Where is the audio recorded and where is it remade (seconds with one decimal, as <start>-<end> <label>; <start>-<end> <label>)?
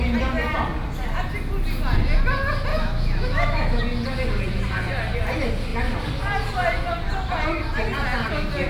0.0-2.7 recorded; 2.7-3.8 remade; 3.8-8.7 recorded